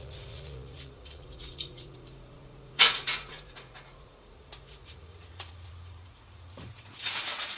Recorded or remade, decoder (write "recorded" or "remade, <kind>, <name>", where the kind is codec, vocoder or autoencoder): remade, vocoder, Vocos